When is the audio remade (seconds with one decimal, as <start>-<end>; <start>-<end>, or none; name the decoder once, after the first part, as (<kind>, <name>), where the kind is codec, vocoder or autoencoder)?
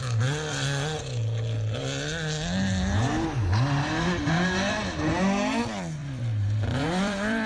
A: 6.0-7.5 (vocoder, BigVGAN v2)